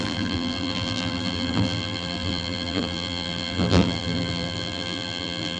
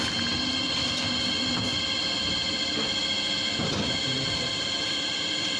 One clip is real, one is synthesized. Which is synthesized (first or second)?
first